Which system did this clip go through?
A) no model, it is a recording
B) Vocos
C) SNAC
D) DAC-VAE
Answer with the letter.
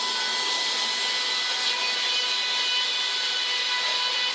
A